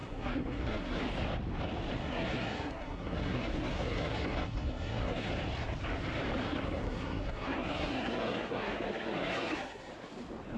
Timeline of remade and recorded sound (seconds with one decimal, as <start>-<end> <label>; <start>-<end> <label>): 0.0-1.0 remade; 1.0-2.0 recorded; 2.0-5.3 remade; 5.3-6.4 recorded; 6.4-9.9 remade; 9.9-10.6 recorded